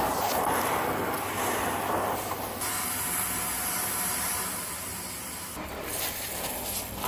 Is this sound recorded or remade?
recorded